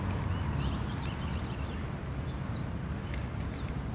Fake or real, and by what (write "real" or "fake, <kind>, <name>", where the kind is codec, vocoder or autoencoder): real